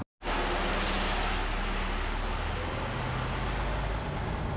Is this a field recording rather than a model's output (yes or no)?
yes